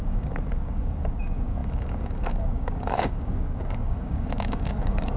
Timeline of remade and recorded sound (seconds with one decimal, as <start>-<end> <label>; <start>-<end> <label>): 0.0-5.2 remade